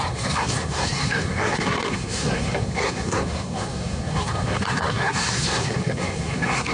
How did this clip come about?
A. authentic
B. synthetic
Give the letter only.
B